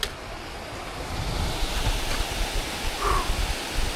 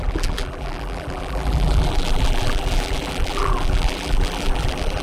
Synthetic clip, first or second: second